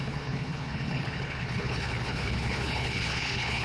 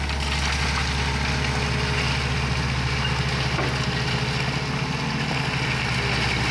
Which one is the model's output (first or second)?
first